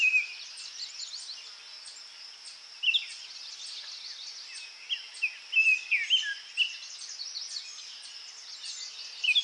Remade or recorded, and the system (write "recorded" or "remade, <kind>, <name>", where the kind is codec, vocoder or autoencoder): recorded